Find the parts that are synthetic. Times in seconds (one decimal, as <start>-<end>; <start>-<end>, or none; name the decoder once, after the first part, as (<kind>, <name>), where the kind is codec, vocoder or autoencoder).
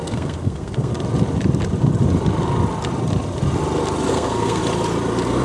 0.0-0.9 (codec, SNAC); 4.1-4.6